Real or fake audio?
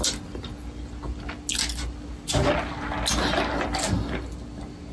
real